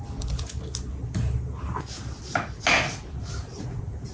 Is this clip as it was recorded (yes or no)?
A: yes